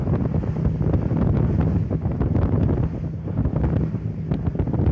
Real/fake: real